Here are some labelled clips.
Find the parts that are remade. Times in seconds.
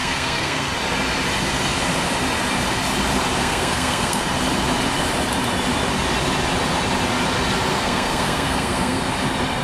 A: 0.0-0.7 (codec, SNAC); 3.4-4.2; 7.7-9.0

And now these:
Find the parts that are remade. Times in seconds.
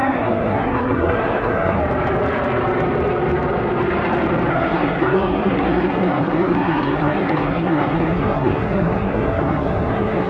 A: 0.0-1.8 (codec, SNAC); 4.5-10.3